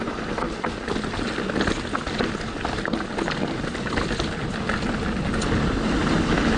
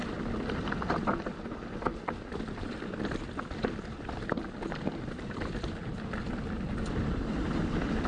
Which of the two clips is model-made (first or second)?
second